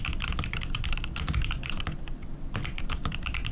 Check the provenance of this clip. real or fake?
real